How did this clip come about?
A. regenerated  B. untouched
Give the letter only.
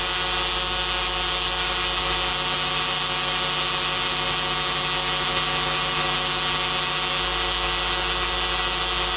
B